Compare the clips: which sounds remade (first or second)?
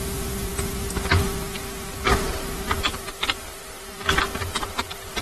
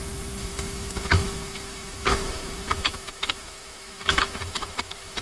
second